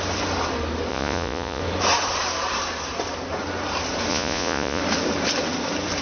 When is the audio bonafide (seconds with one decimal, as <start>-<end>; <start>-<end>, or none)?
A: 0.0-0.9; 1.6-4.1; 4.8-6.0